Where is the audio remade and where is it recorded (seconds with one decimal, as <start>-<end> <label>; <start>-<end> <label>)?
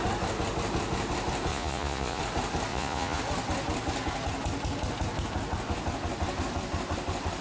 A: 0.0-1.5 recorded; 1.5-2.2 remade; 2.2-2.7 recorded; 2.7-3.2 remade; 3.2-7.4 recorded